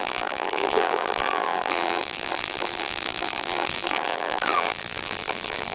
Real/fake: fake